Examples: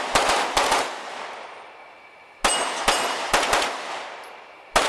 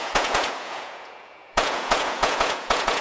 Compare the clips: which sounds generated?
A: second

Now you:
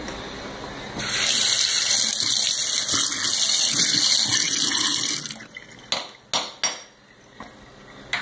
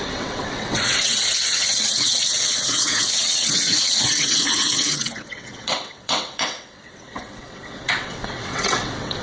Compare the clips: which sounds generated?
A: second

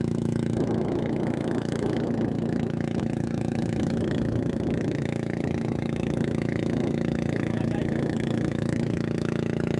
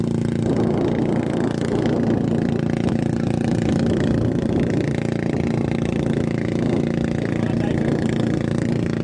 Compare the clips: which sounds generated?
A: first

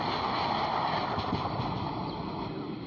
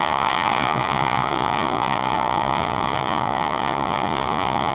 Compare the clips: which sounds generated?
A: second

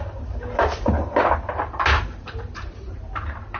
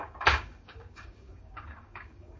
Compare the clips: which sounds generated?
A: second